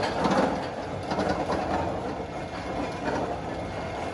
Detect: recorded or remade recorded